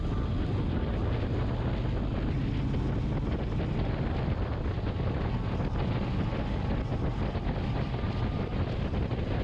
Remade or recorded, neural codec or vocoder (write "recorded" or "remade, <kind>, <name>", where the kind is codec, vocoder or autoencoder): recorded